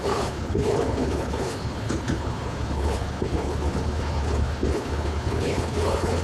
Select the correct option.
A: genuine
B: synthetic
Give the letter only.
B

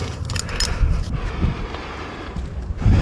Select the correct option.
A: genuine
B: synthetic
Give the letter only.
A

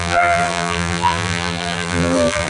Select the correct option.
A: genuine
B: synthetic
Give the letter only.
B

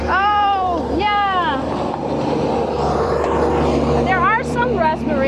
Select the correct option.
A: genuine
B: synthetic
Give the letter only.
B